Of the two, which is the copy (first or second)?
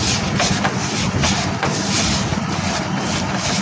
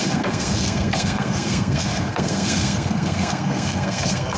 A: second